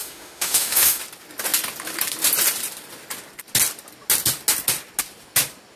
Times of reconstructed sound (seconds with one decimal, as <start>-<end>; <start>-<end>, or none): 0.0-1.0